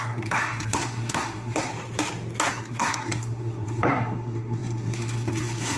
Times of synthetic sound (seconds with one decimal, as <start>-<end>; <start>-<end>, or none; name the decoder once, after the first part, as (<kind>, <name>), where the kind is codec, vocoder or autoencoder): 0.0-1.7 (codec, SNAC); 2.5-5.8